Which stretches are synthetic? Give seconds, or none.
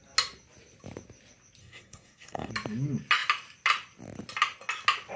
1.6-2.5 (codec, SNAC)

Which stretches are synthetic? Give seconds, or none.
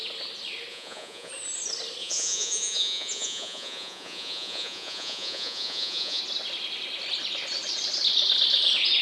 0.7-1.3 (vocoder, Vocos); 2.0-6.2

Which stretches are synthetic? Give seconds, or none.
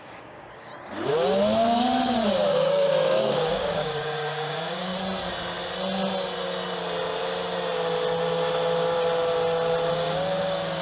0.0-0.7 (codec, DAC); 2.5-4.9; 9.9-10.8